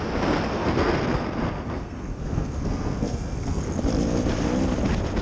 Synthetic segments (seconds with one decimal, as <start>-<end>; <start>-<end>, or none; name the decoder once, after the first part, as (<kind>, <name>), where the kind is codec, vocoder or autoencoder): 0.5-3.6 (codec, SNAC)